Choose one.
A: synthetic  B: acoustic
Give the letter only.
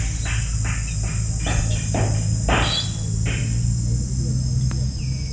B